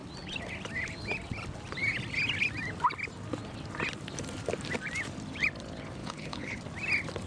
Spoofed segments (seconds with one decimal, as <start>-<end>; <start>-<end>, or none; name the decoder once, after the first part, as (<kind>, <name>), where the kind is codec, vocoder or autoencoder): 6.0-6.6 (codec, HILCodec)